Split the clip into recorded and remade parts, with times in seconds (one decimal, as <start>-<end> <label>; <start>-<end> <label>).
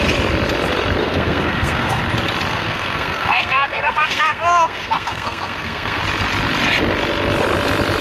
0.0-1.0 recorded; 1.0-2.0 remade; 2.0-2.5 recorded; 2.5-6.0 remade; 6.0-8.0 recorded